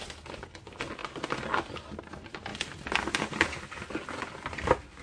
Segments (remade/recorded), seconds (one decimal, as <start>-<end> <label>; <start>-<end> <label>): 0.0-5.0 recorded